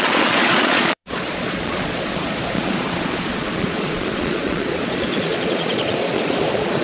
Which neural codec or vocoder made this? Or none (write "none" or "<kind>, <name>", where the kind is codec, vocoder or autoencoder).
vocoder, Vocos